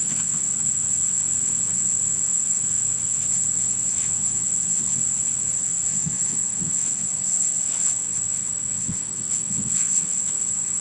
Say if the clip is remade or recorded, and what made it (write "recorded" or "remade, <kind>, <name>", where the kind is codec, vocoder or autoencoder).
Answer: remade, vocoder, WaveNeXt